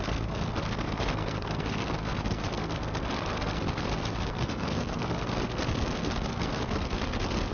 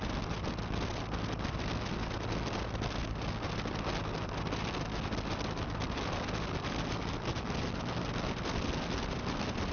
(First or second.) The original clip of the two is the second